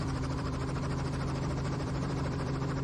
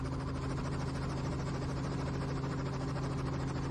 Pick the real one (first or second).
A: second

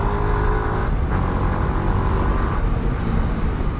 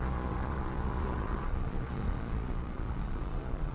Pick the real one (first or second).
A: first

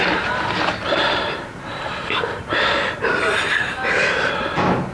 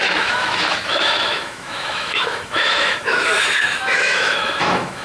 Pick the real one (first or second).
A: first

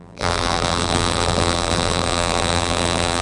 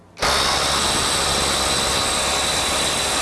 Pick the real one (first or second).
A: second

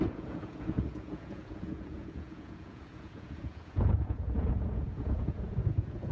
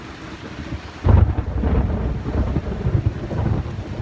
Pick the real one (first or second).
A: second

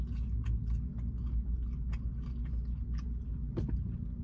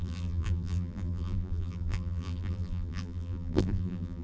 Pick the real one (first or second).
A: first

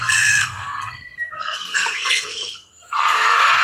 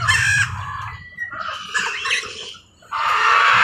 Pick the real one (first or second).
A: second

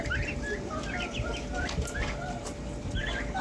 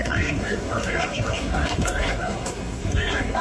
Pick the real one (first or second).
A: first